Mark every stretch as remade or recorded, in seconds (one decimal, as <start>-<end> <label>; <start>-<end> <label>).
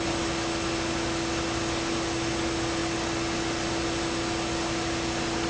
0.0-5.5 recorded